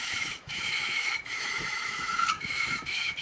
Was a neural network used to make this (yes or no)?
yes